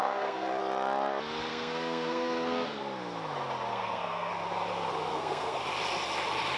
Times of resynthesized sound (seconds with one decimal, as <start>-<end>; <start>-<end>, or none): 0.0-0.6; 1.5-2.8; 3.7-4.3; 5.1-5.6